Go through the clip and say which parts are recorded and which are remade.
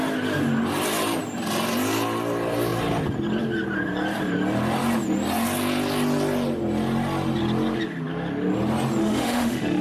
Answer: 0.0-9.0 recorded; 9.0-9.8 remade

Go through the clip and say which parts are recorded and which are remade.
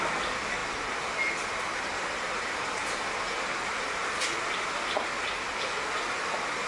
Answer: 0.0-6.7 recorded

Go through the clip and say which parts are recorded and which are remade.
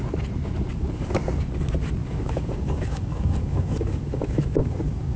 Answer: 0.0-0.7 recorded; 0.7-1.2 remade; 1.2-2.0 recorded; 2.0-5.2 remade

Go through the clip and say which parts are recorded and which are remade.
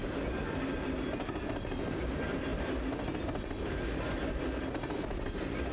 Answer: 0.0-5.7 recorded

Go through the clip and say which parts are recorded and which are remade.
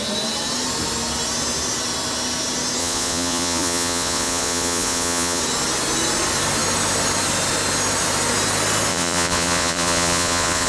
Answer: 0.0-2.8 recorded; 2.8-5.4 remade; 5.4-8.9 recorded; 8.9-10.7 remade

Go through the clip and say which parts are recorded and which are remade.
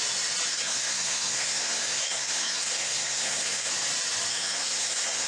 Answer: 0.0-0.5 recorded; 0.5-3.7 remade; 3.7-4.3 recorded; 4.3-5.3 remade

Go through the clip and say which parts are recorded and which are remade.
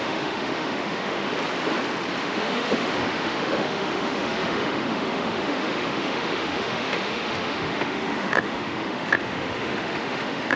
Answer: 0.0-1.3 remade; 1.3-2.2 recorded; 2.2-10.6 remade